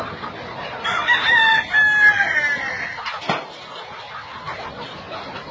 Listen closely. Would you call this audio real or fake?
real